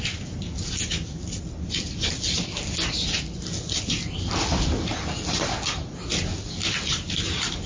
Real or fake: real